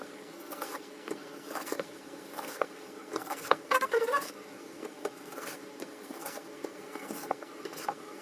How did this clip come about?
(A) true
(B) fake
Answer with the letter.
B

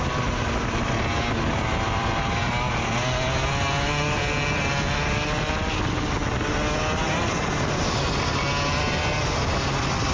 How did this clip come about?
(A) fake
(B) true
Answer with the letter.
B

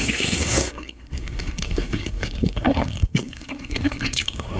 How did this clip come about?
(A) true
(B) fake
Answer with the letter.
B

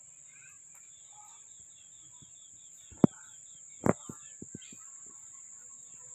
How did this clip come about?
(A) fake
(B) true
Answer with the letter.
B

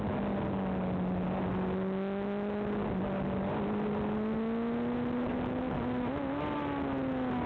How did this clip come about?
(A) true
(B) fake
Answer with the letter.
A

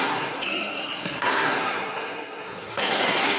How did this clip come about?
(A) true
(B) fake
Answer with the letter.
B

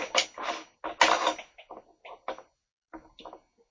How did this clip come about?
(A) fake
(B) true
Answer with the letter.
B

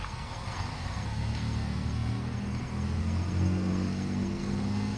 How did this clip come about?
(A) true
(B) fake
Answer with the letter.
B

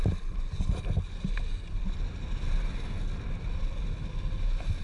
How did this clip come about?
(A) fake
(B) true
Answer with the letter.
B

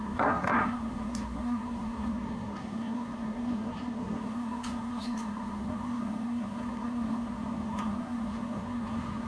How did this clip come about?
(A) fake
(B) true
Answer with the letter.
A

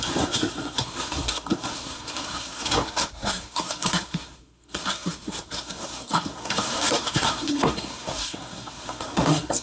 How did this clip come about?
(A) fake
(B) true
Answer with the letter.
A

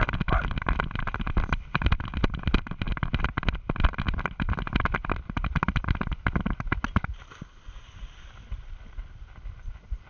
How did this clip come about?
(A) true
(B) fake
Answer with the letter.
A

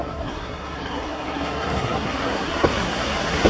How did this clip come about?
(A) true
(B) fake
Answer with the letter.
B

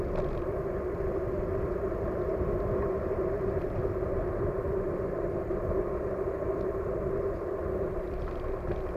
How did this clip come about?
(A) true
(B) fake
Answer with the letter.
A